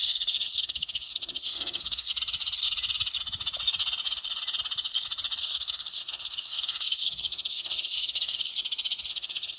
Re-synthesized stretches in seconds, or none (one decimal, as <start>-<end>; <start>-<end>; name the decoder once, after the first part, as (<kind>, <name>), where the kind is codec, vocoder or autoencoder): 0.0-2.1 (codec, SNAC); 5.4-8.5; 9.1-9.6